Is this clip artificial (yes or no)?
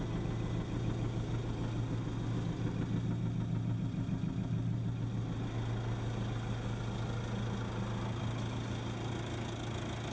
no